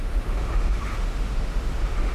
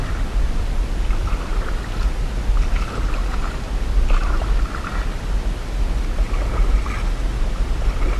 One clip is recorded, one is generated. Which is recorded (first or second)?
second